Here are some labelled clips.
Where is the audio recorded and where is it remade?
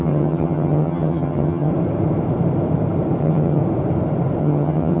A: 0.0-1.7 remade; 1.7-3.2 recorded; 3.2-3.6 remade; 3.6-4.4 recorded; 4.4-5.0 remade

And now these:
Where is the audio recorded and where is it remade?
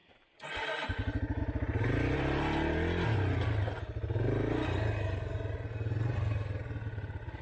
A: 0.0-7.4 recorded